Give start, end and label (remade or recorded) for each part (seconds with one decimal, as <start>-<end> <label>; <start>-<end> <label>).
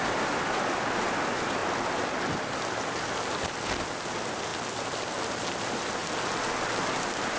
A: 0.0-7.4 recorded